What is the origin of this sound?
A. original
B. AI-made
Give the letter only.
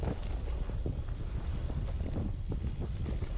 A